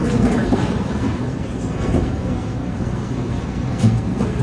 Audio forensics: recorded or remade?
remade